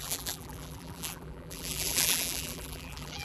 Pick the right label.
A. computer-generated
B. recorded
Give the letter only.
A